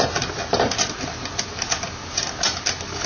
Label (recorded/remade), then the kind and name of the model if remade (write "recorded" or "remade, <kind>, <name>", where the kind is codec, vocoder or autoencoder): recorded